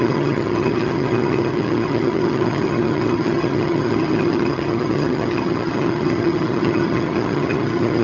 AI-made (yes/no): yes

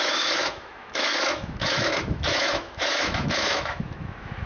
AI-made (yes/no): yes